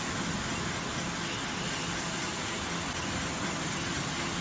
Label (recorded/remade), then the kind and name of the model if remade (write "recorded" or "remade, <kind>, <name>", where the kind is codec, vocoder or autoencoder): recorded